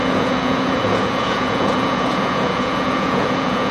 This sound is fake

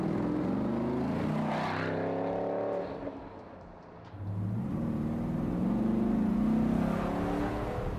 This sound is real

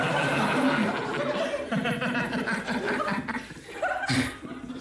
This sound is real